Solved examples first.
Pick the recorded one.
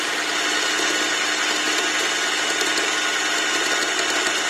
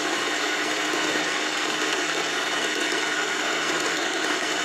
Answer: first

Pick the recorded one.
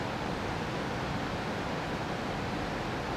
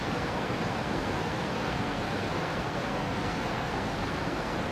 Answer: first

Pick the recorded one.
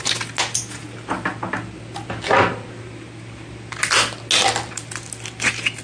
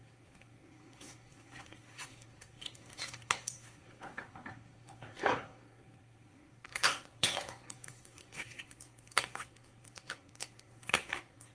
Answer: first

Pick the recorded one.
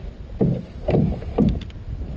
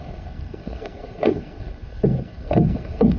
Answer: first